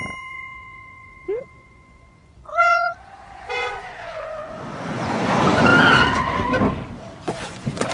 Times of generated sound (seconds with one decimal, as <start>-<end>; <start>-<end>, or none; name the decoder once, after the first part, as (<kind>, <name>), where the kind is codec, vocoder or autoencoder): 0.0-5.7 (vocoder, Vocos); 7.2-7.9